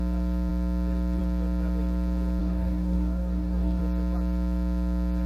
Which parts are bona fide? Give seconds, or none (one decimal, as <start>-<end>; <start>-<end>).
0.0-2.4; 3.8-5.3